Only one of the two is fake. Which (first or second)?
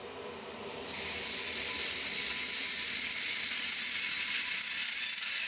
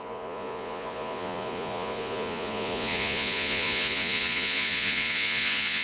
second